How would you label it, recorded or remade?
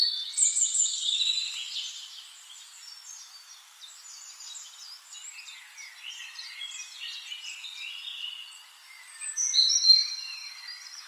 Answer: remade